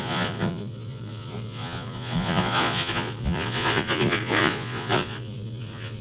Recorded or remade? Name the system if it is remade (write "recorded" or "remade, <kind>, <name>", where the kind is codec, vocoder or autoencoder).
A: remade, vocoder, Vocos